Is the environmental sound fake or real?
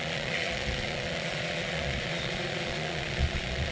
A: fake